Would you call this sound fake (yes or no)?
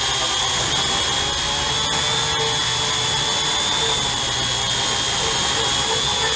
no